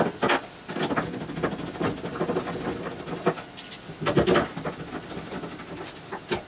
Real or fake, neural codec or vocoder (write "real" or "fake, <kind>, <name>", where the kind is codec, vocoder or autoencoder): real